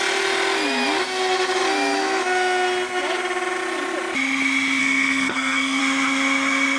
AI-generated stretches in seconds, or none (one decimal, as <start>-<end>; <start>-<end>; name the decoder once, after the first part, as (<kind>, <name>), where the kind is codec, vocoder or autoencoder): 4.8-5.8 (codec, SNAC)